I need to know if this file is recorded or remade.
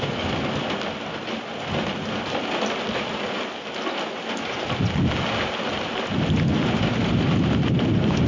recorded